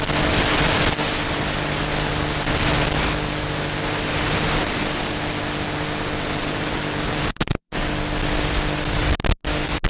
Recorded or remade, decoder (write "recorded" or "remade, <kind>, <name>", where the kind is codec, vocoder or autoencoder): recorded